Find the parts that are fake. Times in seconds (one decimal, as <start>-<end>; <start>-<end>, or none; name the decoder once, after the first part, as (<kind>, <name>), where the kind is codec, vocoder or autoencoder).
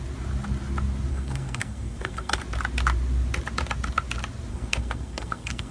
1.1-2.4 (codec, SNAC); 4.5-5.7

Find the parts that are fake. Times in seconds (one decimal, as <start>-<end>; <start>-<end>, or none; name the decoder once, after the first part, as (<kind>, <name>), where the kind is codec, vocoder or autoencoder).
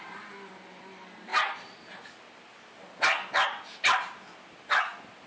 none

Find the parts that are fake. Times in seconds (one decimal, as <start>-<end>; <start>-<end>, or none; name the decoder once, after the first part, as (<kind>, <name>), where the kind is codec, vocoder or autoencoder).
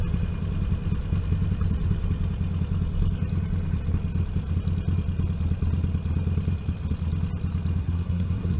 7.8-8.6 (codec, SNAC)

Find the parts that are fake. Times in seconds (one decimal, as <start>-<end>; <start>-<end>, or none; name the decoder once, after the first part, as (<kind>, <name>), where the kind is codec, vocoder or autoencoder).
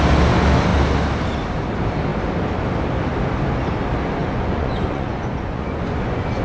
4.2-6.4 (vocoder, Vocos)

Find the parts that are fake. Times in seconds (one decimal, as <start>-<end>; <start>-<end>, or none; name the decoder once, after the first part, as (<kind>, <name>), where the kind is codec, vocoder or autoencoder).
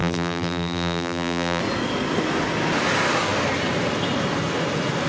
0.0-1.6 (vocoder, BigVGAN v2)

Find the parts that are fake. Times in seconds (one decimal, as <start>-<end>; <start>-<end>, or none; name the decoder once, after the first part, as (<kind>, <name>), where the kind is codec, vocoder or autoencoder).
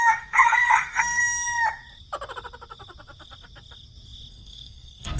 0.0-1.2 (codec, SNAC); 4.3-5.2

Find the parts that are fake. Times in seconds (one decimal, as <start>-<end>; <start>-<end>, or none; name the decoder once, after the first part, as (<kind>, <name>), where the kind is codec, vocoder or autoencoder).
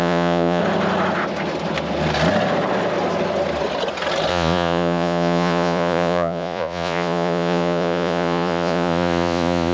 0.0-0.6 (vocoder, Vocos); 4.3-9.7